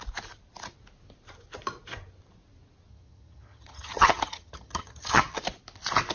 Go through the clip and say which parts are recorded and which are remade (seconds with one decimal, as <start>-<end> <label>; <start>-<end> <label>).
0.0-2.9 recorded; 2.9-5.4 remade; 5.4-6.1 recorded